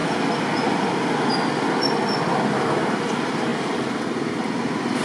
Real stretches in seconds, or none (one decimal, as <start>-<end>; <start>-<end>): 0.0-2.6